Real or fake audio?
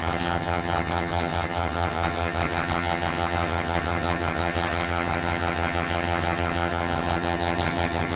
fake